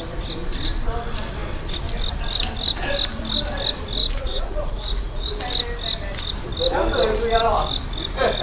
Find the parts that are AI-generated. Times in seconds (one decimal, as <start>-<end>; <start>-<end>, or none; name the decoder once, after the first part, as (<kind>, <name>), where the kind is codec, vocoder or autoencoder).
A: 4.0-5.3 (vocoder, Vocos)